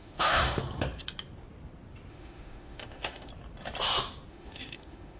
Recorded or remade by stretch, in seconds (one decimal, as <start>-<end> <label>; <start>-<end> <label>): 0.0-0.6 remade; 0.6-2.1 recorded; 2.1-3.3 remade; 3.3-4.3 recorded; 4.3-5.2 remade